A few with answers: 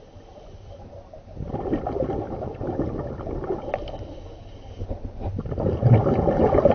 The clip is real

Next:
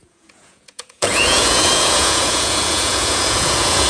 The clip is fake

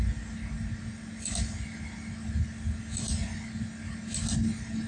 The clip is real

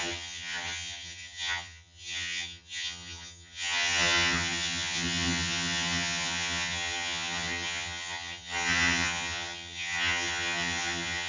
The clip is fake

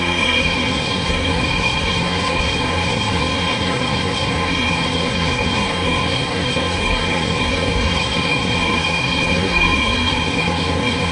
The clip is fake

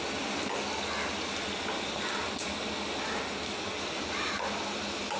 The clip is real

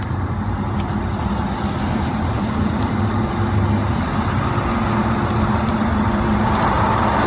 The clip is real